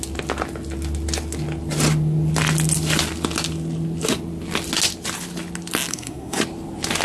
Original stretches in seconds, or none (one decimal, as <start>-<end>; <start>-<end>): 0.0-5.9; 6.4-7.0